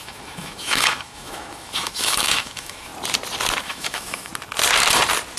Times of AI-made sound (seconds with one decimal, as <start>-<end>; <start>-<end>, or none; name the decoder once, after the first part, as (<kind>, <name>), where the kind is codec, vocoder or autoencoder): 0.0-2.9 (autoencoder, DAC-VAE); 3.6-4.3